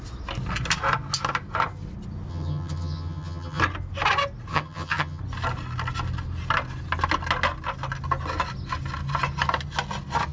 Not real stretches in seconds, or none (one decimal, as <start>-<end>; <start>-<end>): 2.3-3.6; 4.5-5.2

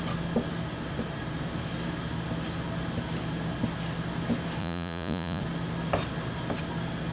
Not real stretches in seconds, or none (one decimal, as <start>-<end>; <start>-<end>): 4.6-5.4

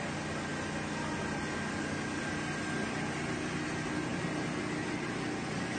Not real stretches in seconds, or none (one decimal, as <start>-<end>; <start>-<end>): none

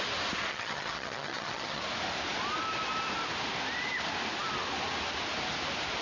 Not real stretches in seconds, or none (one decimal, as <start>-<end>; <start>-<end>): 0.5-1.8

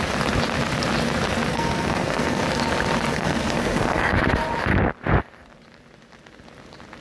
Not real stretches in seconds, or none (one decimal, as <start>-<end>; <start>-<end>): 1.5-2.4; 3.1-4.2

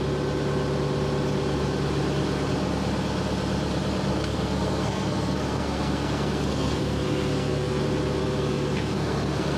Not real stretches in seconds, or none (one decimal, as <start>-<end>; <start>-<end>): 4.1-7.8; 8.2-9.6